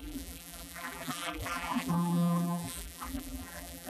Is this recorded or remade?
remade